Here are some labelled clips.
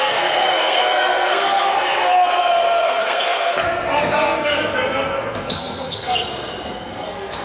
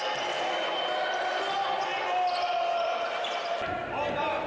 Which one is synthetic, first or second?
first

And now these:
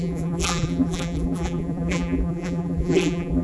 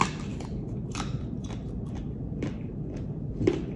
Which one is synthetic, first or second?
first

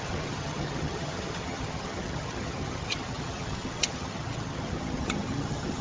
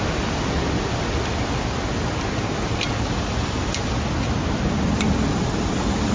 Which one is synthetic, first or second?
first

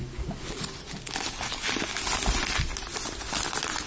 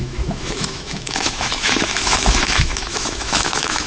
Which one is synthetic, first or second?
second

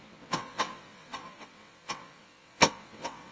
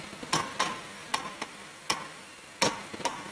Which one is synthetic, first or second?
first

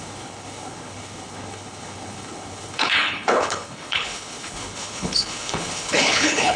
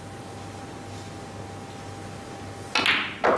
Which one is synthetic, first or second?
first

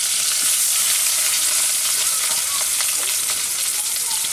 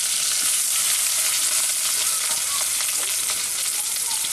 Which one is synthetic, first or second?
first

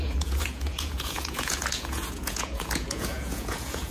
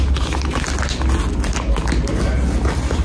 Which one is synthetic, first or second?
first